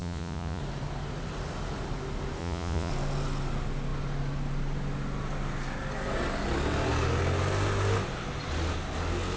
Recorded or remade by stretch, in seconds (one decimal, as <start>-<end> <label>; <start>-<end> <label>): 0.0-0.6 remade; 0.6-2.4 recorded; 2.4-2.9 remade; 2.9-9.4 recorded